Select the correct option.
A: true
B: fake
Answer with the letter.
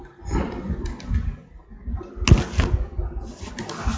A